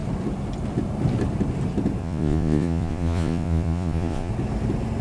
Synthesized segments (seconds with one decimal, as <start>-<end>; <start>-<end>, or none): 2.0-4.3